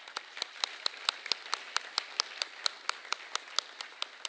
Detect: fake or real real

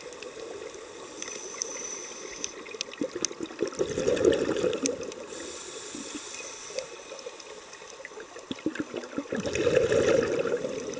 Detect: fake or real real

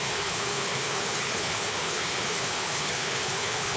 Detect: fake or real fake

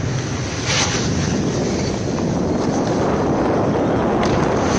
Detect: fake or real real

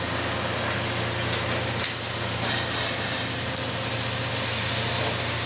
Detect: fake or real real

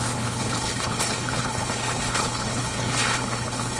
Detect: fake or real fake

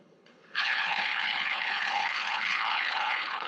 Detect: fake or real fake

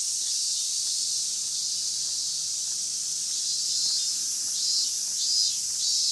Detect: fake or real real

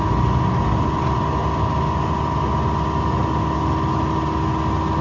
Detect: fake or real real